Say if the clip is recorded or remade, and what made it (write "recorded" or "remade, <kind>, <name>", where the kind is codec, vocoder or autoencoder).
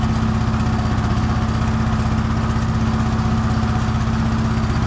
recorded